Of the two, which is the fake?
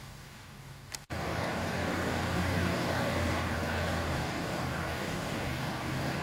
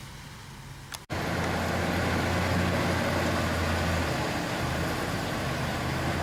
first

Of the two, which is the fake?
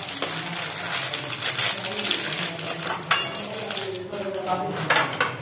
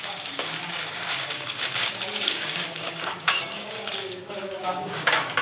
second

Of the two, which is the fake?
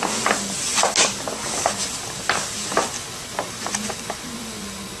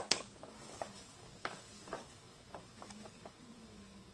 second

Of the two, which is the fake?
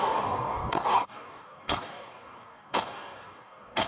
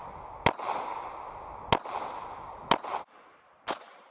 first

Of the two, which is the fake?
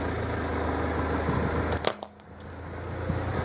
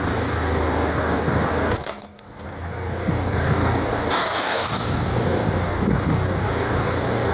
second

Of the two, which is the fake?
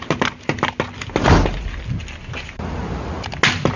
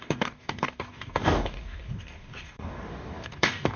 second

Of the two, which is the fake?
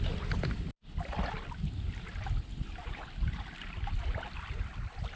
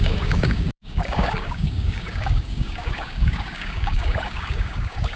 second